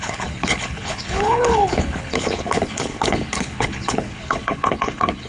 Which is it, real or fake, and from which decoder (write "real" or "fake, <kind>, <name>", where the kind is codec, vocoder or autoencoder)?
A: fake, codec, HILCodec